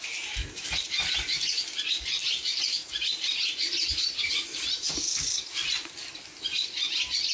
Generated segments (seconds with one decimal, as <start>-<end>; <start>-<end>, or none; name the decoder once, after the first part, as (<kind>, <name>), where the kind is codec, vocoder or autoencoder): 2.2-6.1 (vocoder, BigVGAN v2)